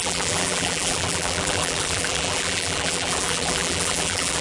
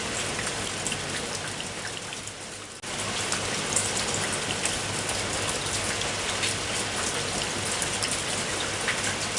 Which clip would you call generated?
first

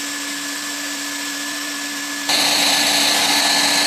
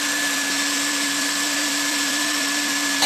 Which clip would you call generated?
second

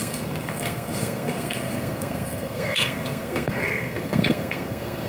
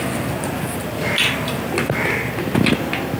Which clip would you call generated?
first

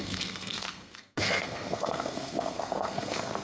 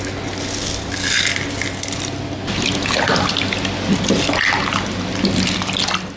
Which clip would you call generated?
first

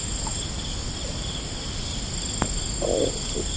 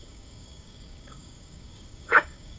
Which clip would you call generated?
second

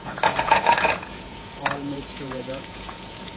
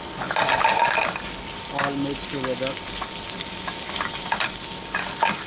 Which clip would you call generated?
first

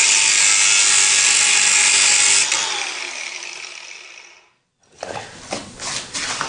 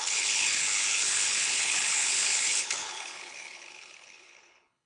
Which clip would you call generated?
second